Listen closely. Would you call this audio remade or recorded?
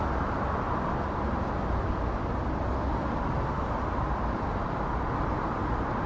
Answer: recorded